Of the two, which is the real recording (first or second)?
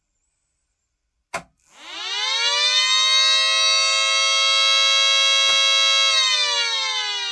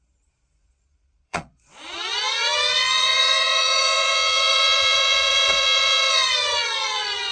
first